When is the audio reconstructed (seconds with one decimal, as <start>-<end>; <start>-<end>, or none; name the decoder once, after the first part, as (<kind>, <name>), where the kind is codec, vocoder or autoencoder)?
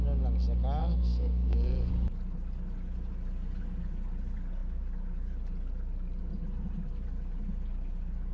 0.8-1.9 (codec, SNAC)